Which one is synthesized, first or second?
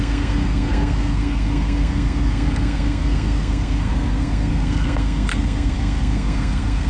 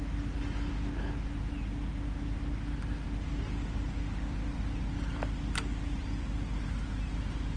first